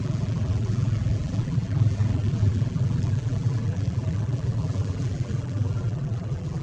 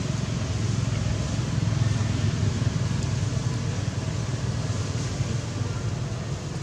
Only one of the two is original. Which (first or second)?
second